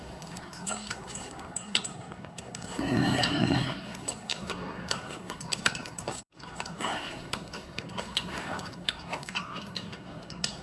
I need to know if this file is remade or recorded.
remade